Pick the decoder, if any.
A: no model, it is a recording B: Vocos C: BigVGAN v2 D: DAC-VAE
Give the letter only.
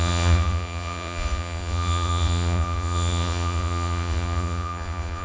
B